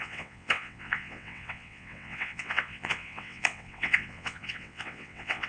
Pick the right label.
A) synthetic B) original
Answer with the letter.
A